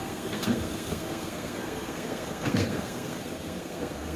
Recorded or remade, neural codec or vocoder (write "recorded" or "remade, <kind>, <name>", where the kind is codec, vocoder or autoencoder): remade, codec, SNAC